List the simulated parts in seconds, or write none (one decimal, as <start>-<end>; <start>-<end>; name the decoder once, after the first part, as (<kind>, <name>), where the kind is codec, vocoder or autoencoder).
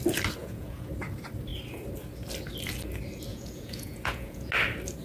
0.4-0.9 (vocoder, Vocos); 3.3-4.5